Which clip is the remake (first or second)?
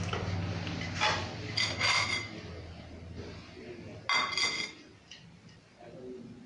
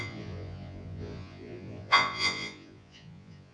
second